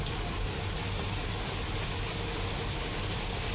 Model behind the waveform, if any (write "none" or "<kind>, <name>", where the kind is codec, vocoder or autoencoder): none